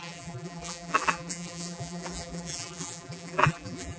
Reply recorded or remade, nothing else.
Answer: remade